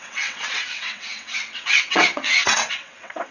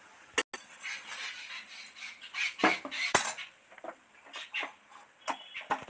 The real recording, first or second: second